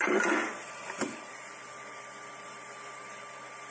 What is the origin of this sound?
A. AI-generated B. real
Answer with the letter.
B